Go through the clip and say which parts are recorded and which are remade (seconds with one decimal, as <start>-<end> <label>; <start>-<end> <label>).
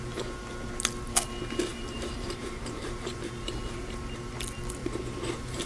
0.0-1.7 recorded; 1.7-3.8 remade; 3.8-4.8 recorded; 4.8-5.7 remade